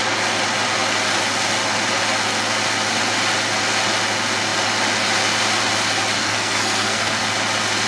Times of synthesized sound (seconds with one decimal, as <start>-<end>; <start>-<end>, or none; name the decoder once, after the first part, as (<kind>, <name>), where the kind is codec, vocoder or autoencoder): 6.2-7.2 (codec, SNAC)